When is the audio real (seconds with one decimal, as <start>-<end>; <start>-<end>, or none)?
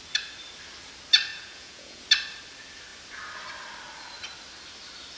0.0-1.3; 2.0-5.2